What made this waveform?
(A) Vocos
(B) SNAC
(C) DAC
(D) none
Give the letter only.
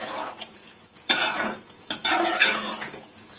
A